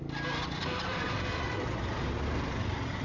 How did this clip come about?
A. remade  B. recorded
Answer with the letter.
B